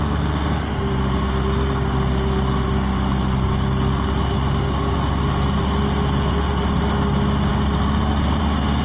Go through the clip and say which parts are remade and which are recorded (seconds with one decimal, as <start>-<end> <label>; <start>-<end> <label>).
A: 0.0-8.8 recorded